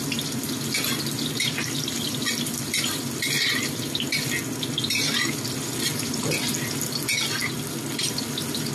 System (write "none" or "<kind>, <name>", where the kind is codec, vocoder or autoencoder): none